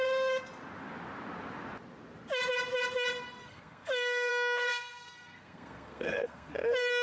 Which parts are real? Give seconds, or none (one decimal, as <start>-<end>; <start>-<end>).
0.0-3.4; 4.3-4.7; 6.5-7.0